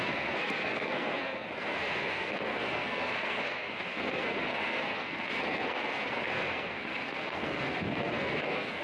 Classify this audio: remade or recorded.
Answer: remade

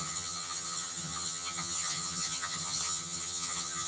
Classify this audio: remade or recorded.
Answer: remade